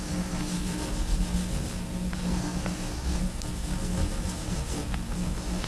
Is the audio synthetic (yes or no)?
yes